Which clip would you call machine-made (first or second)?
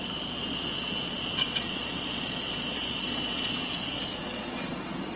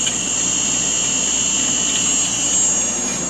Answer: first